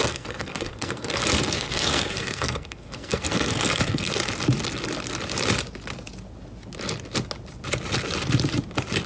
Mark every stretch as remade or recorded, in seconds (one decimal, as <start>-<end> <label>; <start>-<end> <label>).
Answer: 0.0-4.1 remade; 4.1-9.1 recorded